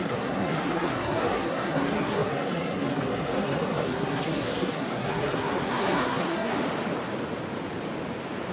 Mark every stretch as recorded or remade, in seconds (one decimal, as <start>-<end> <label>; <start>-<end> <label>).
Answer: 0.0-6.5 remade; 6.5-8.5 recorded